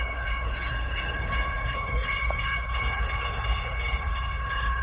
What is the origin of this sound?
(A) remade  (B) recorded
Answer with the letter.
A